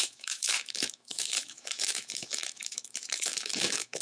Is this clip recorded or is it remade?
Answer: remade